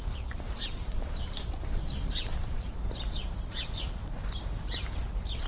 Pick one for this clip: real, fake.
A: fake